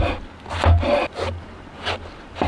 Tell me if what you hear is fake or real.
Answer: real